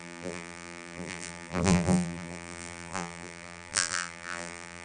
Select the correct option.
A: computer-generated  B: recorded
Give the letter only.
A